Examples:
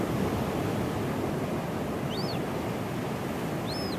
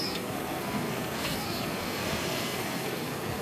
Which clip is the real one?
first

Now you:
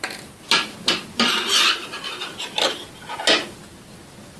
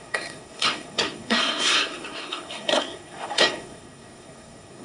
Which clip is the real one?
first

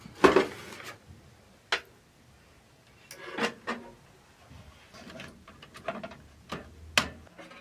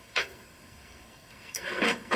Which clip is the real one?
first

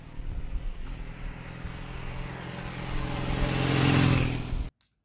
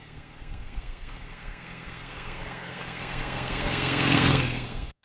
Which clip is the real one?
first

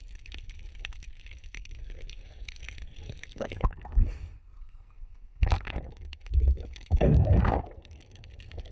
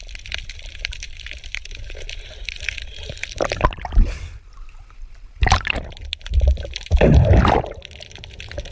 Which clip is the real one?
second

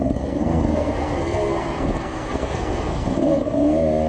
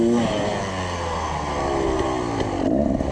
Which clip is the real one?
second